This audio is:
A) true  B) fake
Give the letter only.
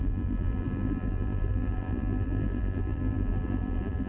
B